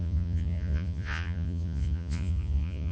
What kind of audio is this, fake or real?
fake